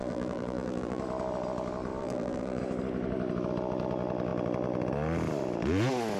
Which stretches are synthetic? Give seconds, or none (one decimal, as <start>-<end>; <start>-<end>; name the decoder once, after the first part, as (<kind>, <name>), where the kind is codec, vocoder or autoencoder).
0.0-1.0 (vocoder, BigVGAN v2); 2.0-2.6